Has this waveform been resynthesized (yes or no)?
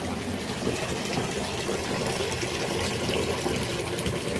no